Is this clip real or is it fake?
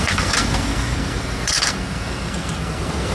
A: fake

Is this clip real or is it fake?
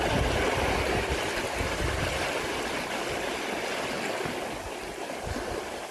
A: real